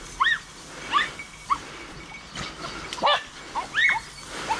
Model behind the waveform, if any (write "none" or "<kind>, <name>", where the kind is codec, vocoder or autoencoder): none